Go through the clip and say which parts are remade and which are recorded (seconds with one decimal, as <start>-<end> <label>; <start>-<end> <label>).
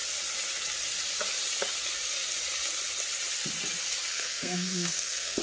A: 0.0-4.1 recorded; 4.1-5.4 remade